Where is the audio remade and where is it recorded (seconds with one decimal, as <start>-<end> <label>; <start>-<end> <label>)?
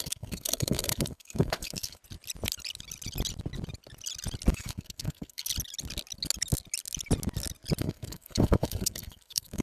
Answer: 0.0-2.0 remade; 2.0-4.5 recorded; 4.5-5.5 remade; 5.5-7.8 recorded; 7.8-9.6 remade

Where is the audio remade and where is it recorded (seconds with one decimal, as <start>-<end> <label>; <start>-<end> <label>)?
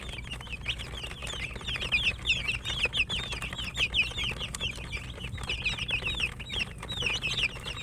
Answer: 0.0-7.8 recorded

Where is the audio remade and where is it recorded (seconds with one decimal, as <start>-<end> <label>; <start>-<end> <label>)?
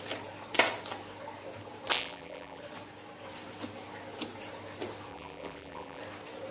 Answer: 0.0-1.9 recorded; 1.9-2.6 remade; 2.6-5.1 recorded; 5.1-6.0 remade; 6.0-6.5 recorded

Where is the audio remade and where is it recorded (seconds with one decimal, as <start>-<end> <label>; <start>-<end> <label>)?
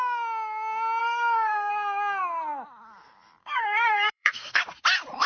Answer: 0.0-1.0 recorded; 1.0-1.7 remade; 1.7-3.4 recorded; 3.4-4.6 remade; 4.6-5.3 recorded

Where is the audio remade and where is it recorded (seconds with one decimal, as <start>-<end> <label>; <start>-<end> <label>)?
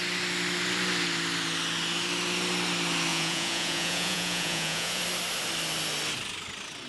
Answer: 0.0-3.1 recorded; 3.1-5.0 remade; 5.0-6.9 recorded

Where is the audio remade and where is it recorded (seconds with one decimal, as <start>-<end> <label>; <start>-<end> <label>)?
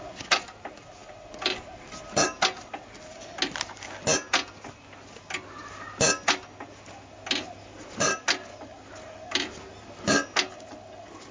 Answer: 0.0-11.3 recorded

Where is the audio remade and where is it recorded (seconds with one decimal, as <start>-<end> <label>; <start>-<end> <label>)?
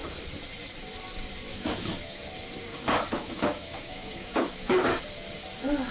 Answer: 0.0-1.5 recorded; 1.5-2.2 remade; 2.2-2.7 recorded; 2.7-5.0 remade; 5.0-5.9 recorded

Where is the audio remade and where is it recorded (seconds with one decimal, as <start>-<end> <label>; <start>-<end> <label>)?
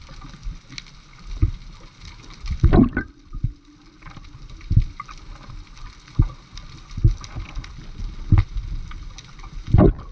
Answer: 0.0-10.1 recorded